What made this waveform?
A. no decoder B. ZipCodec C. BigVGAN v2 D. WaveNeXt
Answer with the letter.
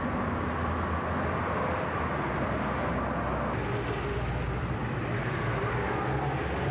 A